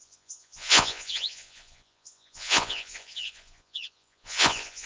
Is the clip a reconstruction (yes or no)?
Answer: yes